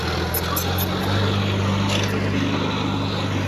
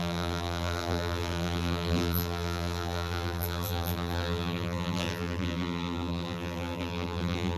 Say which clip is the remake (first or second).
second